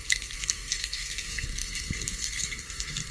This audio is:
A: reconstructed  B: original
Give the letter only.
A